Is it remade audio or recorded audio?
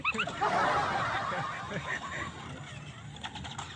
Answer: recorded